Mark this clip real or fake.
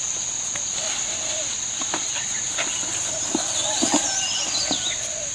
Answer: real